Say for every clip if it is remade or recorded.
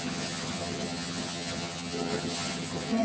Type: remade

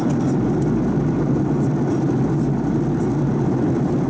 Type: recorded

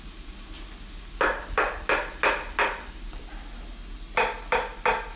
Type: recorded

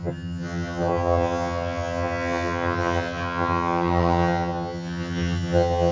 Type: remade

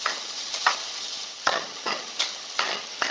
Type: remade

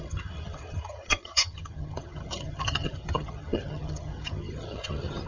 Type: remade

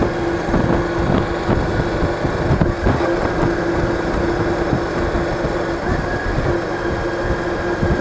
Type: recorded